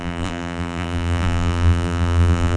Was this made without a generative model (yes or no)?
no